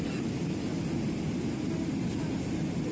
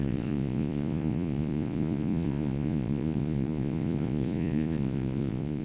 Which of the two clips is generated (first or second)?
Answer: second